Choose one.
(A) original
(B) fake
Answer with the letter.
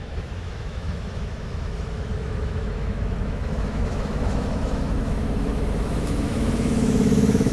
B